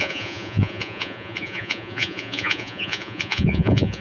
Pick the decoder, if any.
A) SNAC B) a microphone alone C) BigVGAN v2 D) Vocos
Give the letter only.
D